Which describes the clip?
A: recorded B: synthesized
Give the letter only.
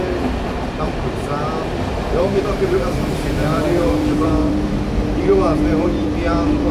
B